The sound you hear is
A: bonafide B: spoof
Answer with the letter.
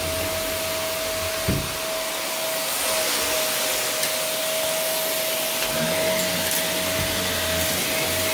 A